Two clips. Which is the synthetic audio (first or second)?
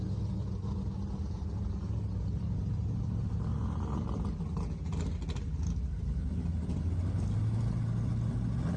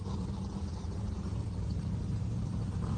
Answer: second